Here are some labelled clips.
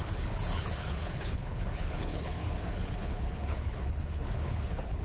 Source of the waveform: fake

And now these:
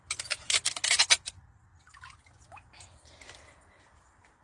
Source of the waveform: real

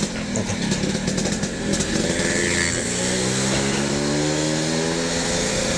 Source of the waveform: real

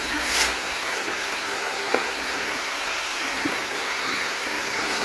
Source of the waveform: fake